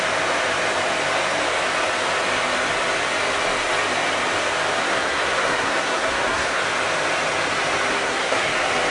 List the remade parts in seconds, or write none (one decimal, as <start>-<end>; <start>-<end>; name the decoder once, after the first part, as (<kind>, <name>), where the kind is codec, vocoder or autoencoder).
4.8-6.6 (codec, SNAC); 7.9-8.5

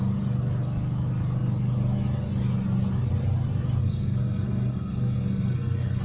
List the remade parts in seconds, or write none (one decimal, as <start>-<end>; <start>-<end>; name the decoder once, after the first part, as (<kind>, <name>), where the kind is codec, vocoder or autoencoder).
3.8-6.0 (codec, SNAC)